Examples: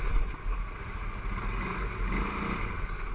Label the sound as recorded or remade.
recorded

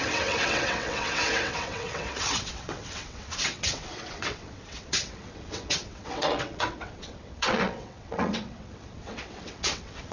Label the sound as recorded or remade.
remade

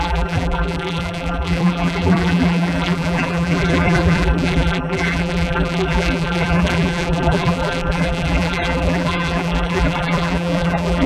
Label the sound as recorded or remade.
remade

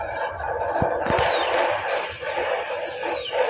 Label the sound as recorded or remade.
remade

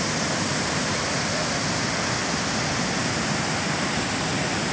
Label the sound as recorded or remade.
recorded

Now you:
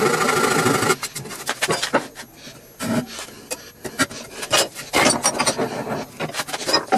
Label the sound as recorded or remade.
recorded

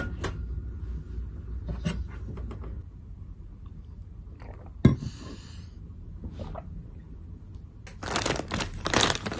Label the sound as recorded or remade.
recorded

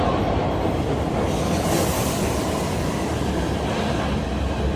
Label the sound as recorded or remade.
recorded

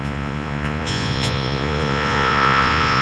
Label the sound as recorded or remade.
remade